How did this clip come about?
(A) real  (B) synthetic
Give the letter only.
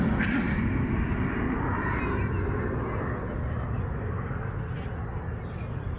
A